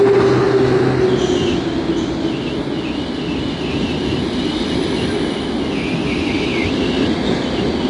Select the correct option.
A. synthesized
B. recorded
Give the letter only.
B